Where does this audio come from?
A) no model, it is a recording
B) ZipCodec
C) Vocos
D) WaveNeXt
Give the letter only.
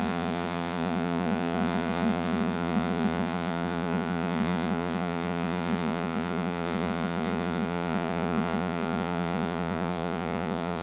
C